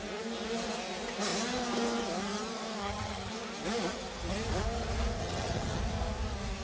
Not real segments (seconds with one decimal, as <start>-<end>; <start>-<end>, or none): 2.8-3.3; 5.2-5.8